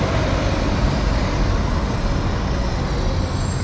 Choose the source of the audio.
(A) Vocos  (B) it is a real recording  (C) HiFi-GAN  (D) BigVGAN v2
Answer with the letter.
B